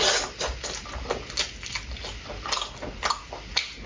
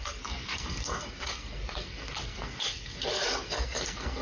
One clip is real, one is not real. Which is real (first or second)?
first